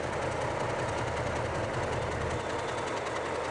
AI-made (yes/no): no